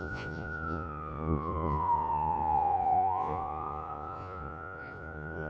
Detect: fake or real fake